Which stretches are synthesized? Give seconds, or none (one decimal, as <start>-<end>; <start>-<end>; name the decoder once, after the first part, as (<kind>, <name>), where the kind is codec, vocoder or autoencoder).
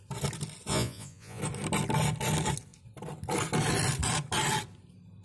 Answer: 0.7-1.4 (vocoder, Vocos)